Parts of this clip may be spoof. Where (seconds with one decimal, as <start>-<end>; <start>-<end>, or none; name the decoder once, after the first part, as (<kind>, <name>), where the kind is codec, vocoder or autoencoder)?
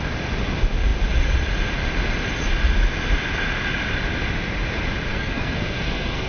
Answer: 5.1-6.3 (codec, SNAC)